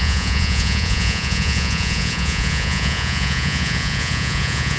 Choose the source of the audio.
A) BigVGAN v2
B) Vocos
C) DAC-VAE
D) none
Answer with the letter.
B